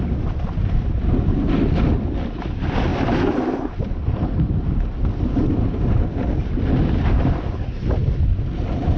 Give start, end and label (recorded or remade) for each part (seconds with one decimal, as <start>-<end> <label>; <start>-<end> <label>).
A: 0.0-9.0 recorded